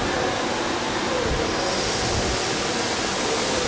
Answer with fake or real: real